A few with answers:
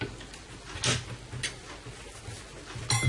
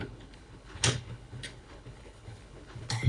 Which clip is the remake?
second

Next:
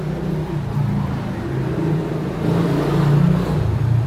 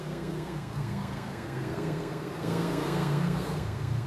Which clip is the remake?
second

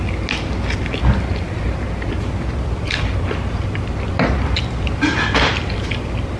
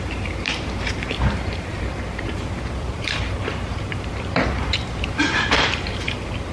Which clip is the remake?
second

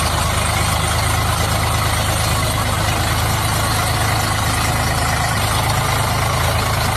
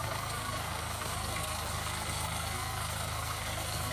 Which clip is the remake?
second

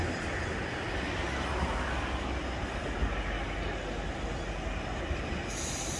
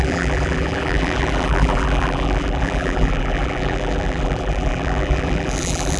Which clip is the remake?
second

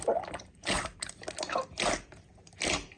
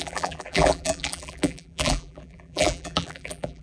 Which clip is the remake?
second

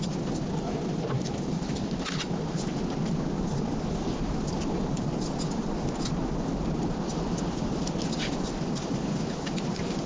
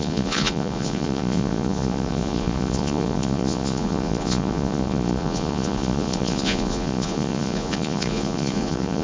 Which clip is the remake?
second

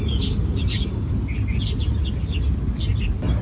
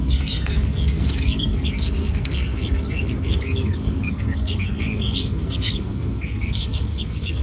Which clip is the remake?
second